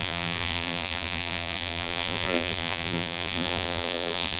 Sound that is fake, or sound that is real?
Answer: fake